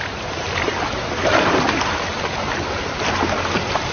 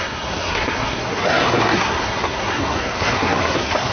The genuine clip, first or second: first